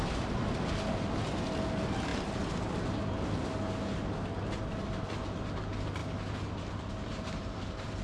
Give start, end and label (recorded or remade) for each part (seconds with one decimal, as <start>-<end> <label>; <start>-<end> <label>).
0.0-8.0 recorded